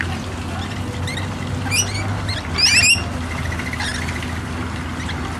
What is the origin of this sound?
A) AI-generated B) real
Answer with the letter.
B